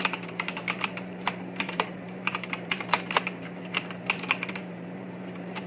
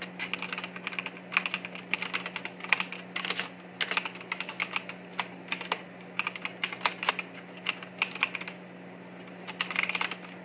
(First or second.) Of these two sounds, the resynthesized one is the first